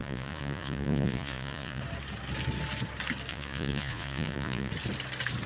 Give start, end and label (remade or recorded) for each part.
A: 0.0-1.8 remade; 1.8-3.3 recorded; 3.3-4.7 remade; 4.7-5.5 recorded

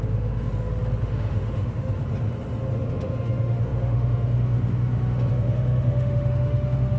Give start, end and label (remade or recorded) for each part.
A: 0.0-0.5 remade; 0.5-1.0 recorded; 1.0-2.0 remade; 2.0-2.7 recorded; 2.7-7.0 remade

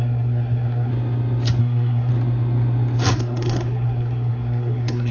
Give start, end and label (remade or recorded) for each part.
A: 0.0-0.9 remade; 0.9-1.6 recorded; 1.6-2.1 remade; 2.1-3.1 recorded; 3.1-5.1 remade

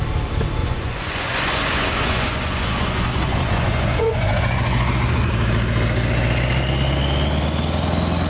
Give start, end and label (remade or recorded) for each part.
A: 0.0-0.6 recorded; 0.6-5.3 remade; 5.3-8.3 recorded